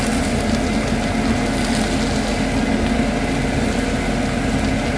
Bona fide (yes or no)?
yes